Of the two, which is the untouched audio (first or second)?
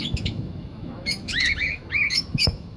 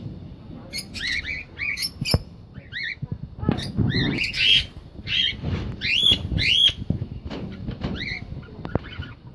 second